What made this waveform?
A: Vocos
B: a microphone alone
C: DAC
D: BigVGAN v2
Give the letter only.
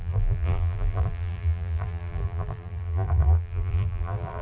D